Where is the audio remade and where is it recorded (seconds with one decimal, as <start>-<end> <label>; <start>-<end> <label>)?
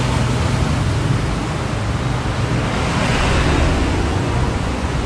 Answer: 0.0-3.1 recorded; 3.1-5.1 remade